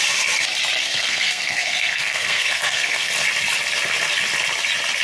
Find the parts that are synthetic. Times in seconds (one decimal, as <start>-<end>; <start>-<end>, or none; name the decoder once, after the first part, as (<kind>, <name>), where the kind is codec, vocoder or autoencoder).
0.8-3.1 (codec, SNAC)